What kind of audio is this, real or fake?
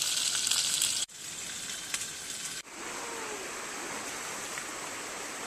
real